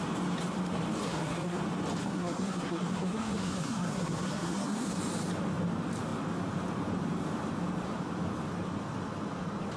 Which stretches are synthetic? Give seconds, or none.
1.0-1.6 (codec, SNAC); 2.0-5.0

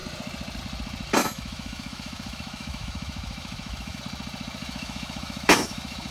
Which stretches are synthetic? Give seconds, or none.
1.2-4.0 (autoencoder, DAC-VAE); 4.6-6.1

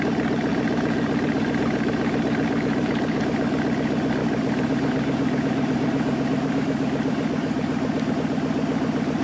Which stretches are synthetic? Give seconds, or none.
0.5-3.2 (vocoder, BigVGAN v2); 4.2-8.1